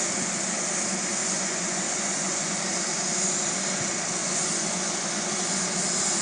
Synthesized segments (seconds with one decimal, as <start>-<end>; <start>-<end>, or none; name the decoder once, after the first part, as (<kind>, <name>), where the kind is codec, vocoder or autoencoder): 1.2-2.6 (vocoder, Vocos); 4.2-5.6